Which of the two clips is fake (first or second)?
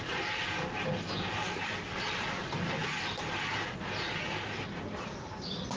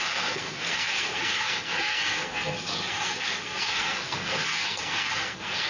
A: second